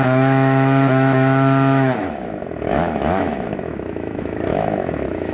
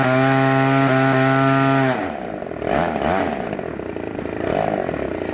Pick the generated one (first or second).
first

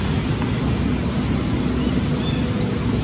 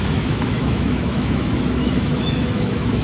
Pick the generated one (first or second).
second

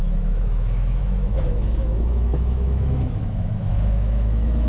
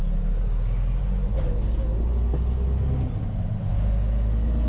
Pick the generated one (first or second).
first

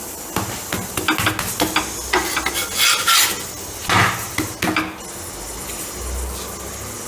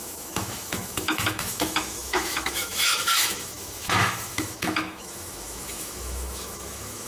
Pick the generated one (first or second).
second